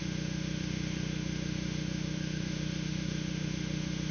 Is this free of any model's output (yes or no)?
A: no